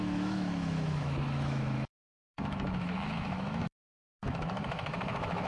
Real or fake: fake